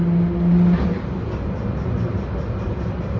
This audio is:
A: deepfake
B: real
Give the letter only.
B